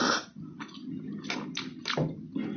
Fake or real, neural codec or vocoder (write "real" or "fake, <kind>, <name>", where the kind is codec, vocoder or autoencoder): real